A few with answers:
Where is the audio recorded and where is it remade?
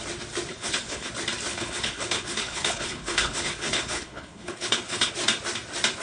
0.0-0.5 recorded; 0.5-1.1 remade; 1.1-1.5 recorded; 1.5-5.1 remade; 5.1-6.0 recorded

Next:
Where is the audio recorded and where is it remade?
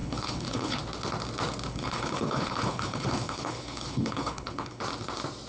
0.0-0.8 remade; 0.8-1.7 recorded; 1.7-4.8 remade; 4.8-5.5 recorded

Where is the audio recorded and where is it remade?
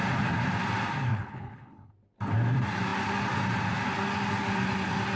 0.0-1.1 recorded; 1.1-1.9 remade; 1.9-5.2 recorded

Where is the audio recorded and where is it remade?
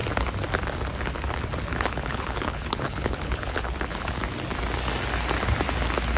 0.0-1.7 recorded; 1.7-4.2 remade; 4.2-6.2 recorded